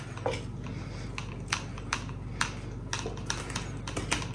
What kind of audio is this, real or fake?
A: real